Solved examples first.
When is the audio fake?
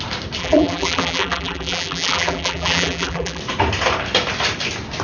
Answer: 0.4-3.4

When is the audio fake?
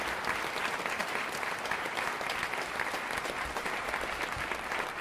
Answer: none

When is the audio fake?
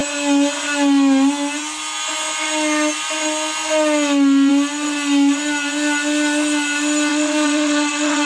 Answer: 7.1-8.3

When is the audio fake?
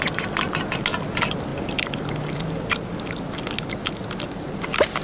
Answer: 1.5-3.1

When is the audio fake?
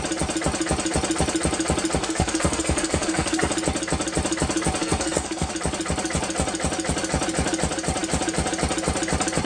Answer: 2.0-3.5; 4.8-5.5